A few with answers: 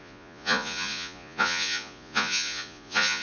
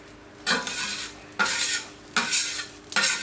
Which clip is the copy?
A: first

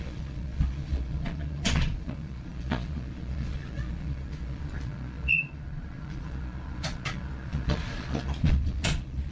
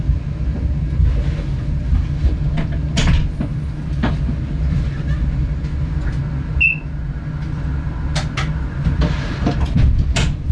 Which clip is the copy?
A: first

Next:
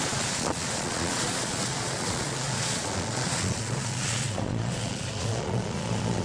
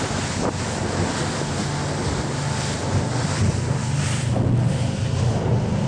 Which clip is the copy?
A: first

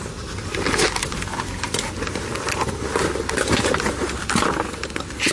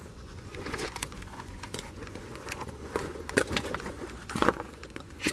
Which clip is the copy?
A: second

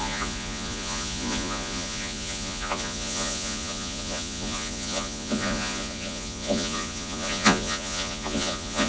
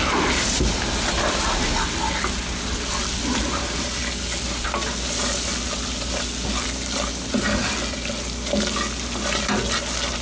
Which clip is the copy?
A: first